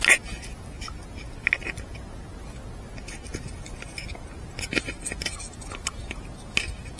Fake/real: real